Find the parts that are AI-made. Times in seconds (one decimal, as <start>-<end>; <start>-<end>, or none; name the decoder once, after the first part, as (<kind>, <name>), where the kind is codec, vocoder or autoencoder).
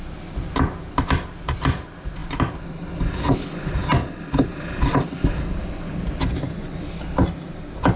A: none